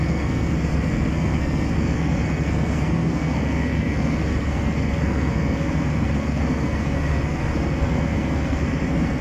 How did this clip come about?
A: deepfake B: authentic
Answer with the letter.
A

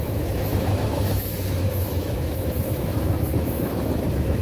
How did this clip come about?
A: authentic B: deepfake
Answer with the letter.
B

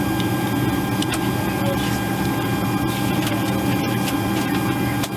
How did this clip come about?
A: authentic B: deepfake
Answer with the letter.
A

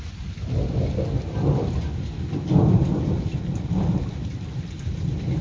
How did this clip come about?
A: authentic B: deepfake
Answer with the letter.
A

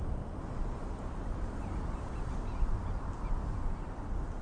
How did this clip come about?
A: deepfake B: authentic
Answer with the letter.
B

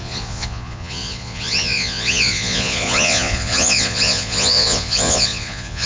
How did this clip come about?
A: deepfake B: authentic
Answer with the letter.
A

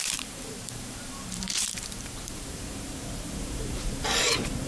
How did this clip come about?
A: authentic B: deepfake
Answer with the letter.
B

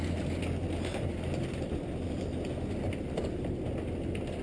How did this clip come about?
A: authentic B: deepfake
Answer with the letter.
A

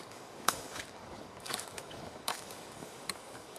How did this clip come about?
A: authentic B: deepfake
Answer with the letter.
B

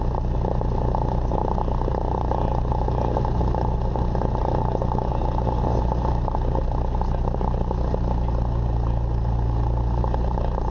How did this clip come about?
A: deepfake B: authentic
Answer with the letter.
B